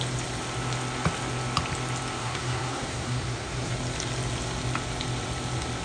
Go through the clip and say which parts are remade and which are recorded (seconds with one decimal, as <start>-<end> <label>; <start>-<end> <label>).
0.0-2.2 recorded; 2.2-3.7 remade; 3.7-5.8 recorded

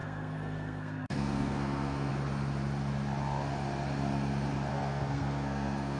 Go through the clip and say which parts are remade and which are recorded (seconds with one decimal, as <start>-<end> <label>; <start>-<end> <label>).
0.0-2.1 remade; 2.1-4.7 recorded; 4.7-6.0 remade

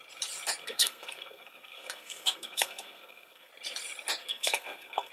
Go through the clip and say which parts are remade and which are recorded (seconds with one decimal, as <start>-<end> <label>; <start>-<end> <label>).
0.0-0.6 recorded; 0.6-3.5 remade; 3.5-4.2 recorded; 4.2-5.1 remade

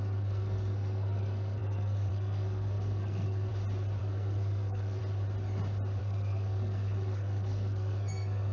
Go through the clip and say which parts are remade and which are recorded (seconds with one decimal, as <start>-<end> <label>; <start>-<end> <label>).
0.0-3.5 remade; 3.5-4.0 recorded; 4.0-5.0 remade; 5.0-6.0 recorded; 6.0-8.5 remade